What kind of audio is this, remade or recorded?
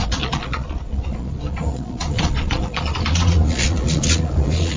remade